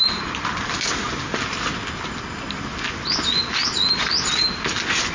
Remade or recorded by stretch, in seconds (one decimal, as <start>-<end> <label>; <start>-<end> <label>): 0.0-5.1 recorded